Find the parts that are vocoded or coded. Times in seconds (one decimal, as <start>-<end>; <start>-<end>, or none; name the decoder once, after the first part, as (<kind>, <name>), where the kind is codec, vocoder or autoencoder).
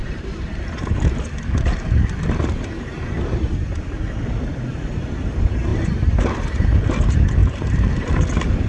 0.0-0.6 (vocoder, BigVGAN v2); 7.4-8.1